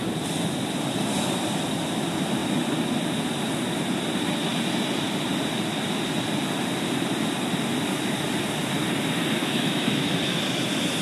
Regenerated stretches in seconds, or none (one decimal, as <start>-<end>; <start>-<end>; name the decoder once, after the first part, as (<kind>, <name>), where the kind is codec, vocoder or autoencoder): 9.4-10.1 (autoencoder, DAC-VAE)